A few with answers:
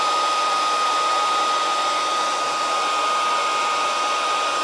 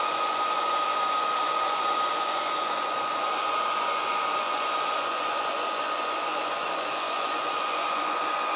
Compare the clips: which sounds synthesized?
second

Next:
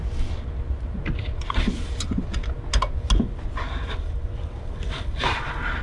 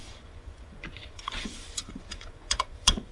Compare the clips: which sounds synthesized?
second